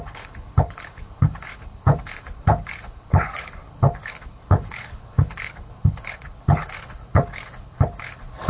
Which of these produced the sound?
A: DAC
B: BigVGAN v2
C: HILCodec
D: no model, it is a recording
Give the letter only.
C